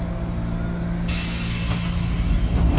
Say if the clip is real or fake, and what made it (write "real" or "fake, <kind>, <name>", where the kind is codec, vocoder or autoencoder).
real